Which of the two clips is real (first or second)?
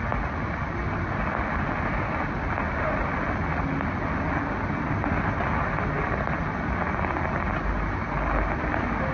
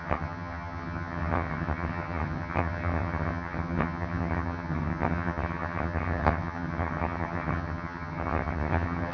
first